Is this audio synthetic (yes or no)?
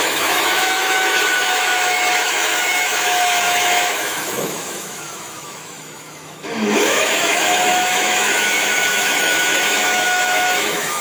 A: yes